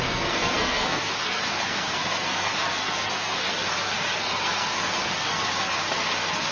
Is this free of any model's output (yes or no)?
no